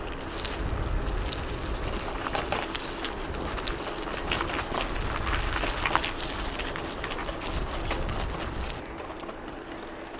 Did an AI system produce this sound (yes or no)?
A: no